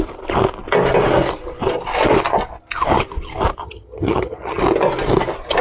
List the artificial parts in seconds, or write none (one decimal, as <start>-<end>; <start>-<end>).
3.6-4.6